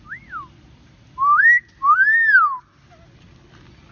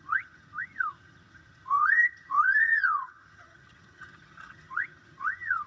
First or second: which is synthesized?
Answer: second